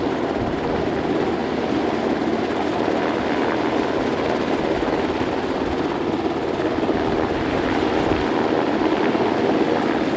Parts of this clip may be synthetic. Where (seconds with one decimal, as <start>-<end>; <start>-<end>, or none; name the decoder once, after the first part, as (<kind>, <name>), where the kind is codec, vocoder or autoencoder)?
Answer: none